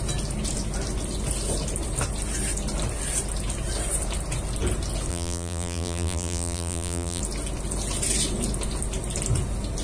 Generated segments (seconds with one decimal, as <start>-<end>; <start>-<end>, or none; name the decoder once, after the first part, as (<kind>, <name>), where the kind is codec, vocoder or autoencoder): 5.1-7.2 (vocoder, BigVGAN v2)